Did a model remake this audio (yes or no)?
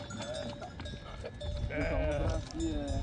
no